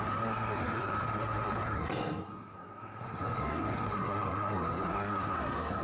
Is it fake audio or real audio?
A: fake